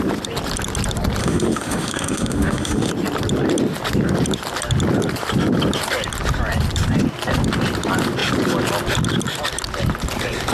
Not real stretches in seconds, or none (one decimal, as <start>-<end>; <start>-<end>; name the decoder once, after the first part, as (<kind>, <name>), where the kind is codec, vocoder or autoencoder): 1.2-2.9 (autoencoder, DAC-VAE)